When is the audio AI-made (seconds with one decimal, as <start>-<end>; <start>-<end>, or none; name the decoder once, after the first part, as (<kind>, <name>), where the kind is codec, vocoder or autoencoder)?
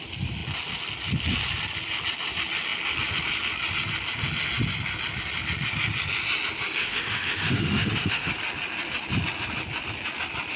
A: 6.8-8.3 (autoencoder, DAC-VAE)